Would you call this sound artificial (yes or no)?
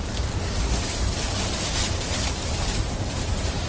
yes